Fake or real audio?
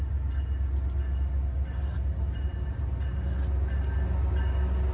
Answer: real